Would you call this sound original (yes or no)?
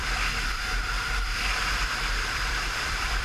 no